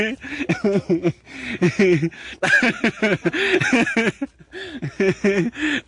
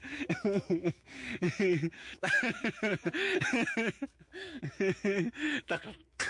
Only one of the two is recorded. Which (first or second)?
first